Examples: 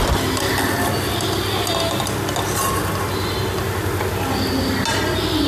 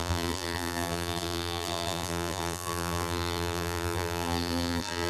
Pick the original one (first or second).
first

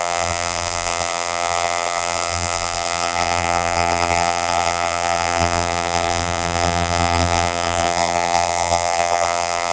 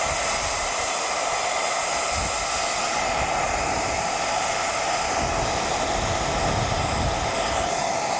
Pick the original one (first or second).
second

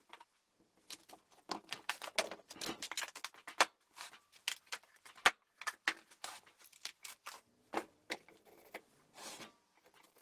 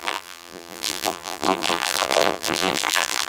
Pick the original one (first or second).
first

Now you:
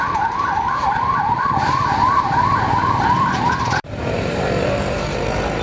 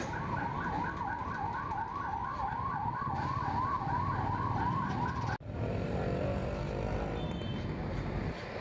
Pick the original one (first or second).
second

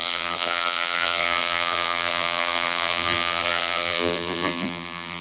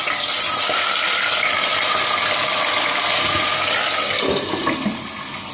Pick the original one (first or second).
second